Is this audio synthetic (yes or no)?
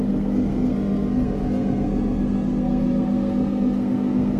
yes